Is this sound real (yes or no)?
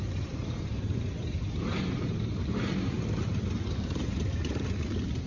no